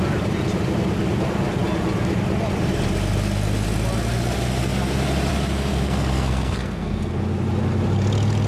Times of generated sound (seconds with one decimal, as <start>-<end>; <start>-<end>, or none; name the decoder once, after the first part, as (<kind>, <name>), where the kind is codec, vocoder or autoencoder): 5.7-7.2 (codec, SNAC)